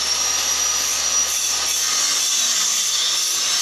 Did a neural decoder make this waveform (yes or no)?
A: no